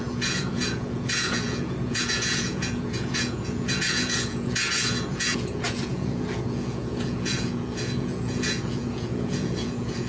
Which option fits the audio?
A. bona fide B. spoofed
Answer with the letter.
B